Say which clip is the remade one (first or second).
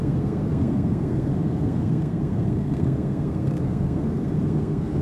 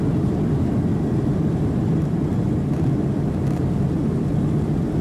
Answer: first